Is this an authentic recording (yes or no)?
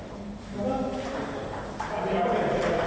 yes